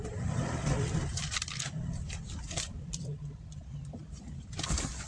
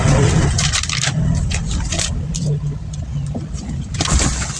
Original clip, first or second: second